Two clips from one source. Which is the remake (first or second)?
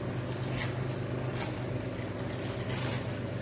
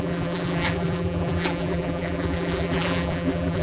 second